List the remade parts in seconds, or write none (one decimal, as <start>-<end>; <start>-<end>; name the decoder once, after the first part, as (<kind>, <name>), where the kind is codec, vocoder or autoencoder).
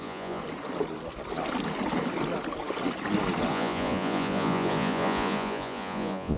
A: 0.0-0.4 (vocoder, Vocos); 3.5-6.4